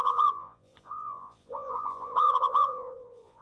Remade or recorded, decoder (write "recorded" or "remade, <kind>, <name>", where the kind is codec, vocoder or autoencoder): remade, vocoder, Vocos